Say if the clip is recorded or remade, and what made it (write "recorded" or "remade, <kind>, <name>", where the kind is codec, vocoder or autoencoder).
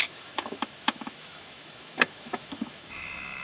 remade, autoencoder, DAC-VAE